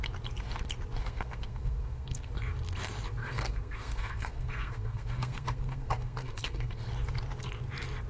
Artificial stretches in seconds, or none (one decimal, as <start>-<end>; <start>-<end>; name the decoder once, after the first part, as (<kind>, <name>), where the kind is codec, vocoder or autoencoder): 1.0-2.3 (codec, SNAC); 3.2-6.9